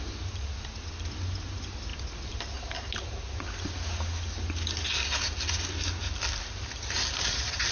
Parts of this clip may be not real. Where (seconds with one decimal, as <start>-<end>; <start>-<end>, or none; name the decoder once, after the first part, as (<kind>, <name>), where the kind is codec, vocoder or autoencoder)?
none